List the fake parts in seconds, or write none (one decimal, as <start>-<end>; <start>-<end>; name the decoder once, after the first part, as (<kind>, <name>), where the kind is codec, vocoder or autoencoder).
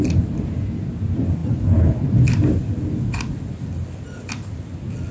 none